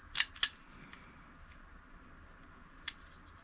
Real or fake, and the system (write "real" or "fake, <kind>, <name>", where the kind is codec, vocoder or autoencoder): real